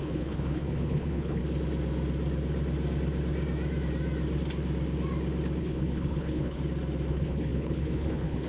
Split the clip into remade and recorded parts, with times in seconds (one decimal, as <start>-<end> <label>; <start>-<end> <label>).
0.0-1.4 remade; 1.4-5.6 recorded; 5.6-6.6 remade; 6.6-7.1 recorded; 7.1-8.5 remade